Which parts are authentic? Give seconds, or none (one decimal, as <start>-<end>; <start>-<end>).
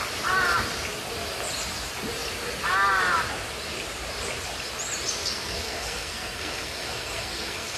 0.0-5.2